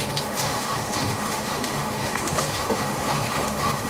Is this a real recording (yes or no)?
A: no